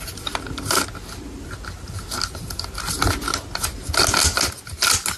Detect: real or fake real